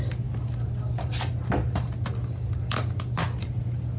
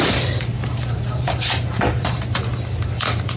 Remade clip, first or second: second